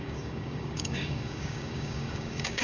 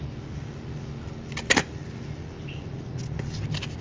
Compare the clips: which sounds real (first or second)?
second